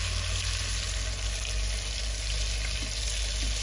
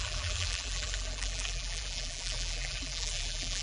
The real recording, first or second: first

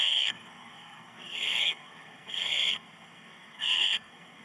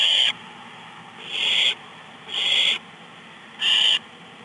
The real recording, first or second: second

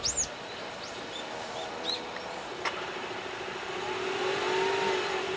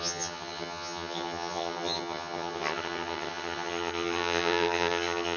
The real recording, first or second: first